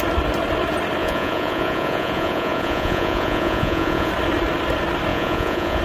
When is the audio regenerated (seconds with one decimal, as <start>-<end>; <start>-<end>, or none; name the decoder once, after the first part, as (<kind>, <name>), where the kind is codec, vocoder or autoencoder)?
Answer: 1.0-4.1 (vocoder, Vocos); 5.1-5.8